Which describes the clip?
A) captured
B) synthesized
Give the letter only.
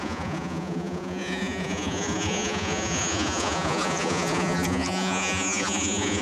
B